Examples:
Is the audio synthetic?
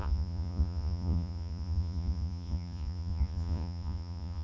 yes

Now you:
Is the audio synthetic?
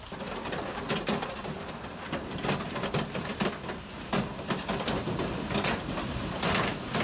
no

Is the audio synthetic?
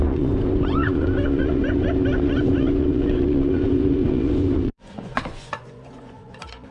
yes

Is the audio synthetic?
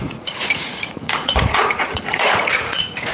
yes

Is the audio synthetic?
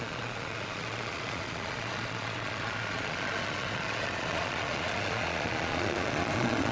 yes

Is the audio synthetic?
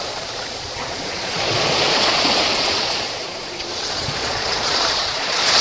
yes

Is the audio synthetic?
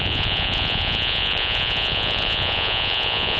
yes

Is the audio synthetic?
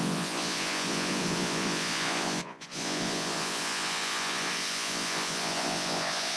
yes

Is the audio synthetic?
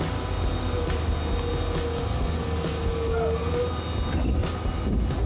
no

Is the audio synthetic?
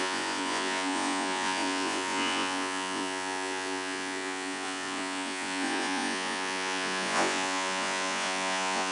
yes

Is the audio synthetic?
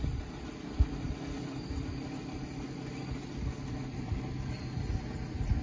no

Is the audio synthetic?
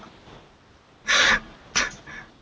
no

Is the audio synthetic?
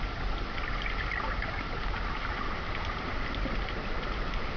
no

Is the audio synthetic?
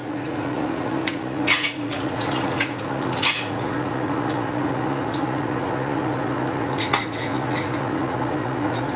yes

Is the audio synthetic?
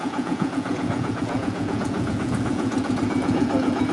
yes